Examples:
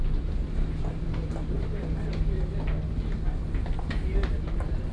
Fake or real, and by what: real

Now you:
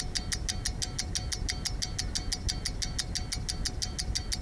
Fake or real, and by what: real